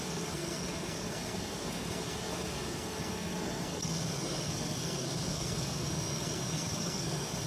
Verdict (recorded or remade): remade